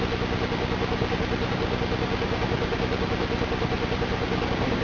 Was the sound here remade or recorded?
recorded